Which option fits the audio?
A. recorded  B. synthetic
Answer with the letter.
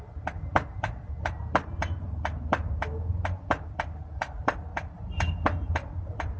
B